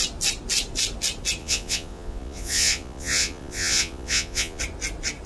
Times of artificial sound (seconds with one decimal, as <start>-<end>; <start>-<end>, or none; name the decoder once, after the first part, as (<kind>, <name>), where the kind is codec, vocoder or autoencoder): 1.4-4.6 (vocoder, Vocos)